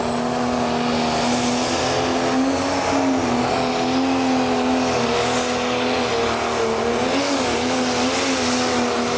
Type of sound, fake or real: real